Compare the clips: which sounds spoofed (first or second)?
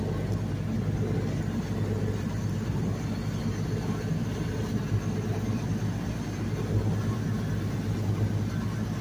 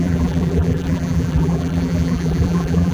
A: second